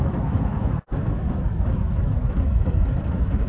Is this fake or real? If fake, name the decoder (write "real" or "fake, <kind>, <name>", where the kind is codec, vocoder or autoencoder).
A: fake, autoencoder, DAC-VAE